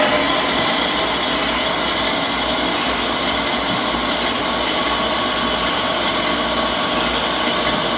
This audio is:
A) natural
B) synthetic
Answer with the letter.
A